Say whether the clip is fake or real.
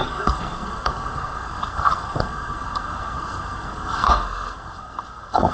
fake